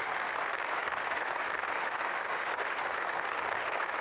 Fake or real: fake